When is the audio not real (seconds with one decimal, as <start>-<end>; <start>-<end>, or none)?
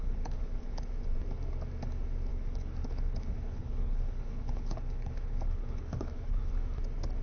0.0-0.9; 2.3-6.5